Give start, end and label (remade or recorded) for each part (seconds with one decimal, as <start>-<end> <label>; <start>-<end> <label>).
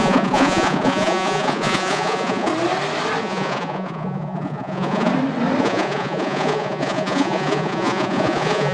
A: 0.0-2.5 remade; 2.5-3.2 recorded; 3.2-5.1 remade; 5.1-5.6 recorded; 5.6-8.7 remade